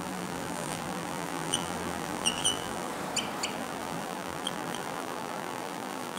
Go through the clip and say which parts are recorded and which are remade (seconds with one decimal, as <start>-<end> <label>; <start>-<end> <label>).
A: 0.0-2.9 remade; 2.9-3.5 recorded; 3.5-6.2 remade